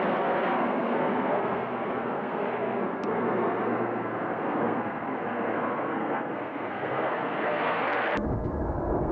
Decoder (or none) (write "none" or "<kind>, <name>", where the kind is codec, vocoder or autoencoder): codec, SNAC